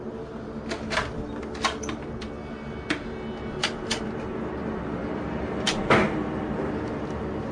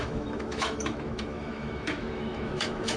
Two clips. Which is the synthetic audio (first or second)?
second